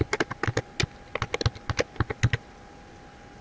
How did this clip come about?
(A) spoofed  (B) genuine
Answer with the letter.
B